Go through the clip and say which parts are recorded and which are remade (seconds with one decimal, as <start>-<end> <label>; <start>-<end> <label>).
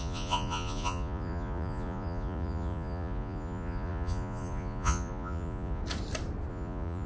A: 0.0-5.8 remade; 5.8-6.5 recorded; 6.5-7.1 remade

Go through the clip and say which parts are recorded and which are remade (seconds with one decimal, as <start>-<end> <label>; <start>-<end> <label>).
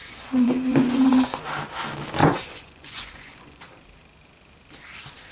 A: 0.0-1.4 remade; 1.4-2.2 recorded; 2.2-3.6 remade; 3.6-5.3 recorded